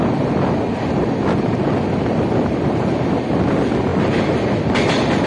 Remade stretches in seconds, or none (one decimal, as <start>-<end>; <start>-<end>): none